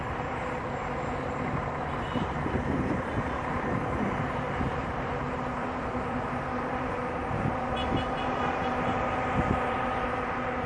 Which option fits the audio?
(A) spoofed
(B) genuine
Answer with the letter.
A